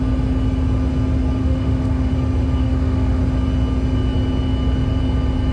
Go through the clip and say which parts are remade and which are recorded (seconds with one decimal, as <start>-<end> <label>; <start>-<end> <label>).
0.0-1.4 recorded; 1.4-2.1 remade; 2.1-2.6 recorded; 2.6-3.2 remade; 3.2-5.5 recorded